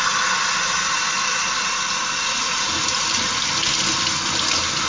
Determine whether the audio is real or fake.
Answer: real